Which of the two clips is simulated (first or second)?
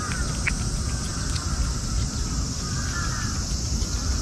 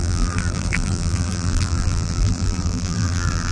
second